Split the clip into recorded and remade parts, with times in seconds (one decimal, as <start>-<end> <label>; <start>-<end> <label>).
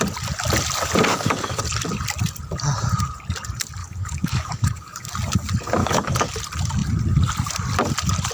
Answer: 0.0-1.1 recorded; 1.1-1.6 remade; 1.6-3.8 recorded; 3.8-5.1 remade; 5.1-5.8 recorded; 5.8-6.3 remade; 6.3-8.3 recorded